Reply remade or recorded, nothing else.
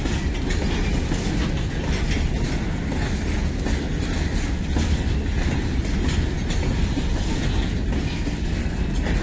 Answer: recorded